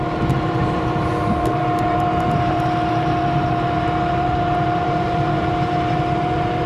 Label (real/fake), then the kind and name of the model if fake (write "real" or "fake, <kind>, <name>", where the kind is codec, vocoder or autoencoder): fake, vocoder, BigVGAN v2